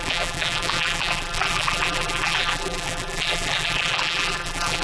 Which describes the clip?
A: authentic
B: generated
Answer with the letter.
B